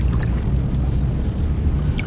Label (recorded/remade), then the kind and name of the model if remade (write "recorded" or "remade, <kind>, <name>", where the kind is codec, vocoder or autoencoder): recorded